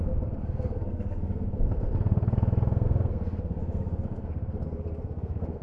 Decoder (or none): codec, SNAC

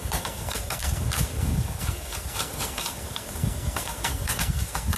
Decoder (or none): codec, SNAC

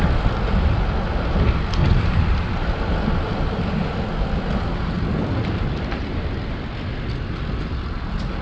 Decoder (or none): none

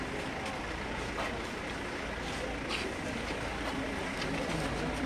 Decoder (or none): none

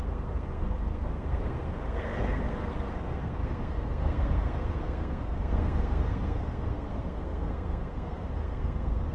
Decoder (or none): codec, SNAC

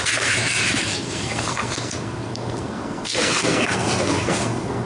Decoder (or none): codec, SNAC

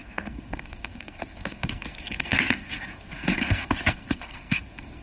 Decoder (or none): codec, SNAC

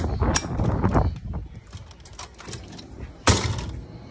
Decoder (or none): none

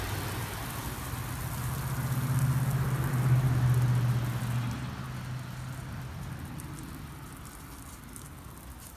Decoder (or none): none